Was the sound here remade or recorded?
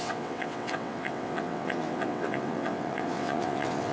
remade